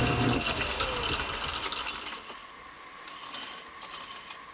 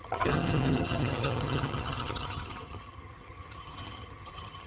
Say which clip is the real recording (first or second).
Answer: first